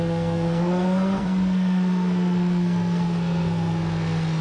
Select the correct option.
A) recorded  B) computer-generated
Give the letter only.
B